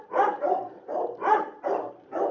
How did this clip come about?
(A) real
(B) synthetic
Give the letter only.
B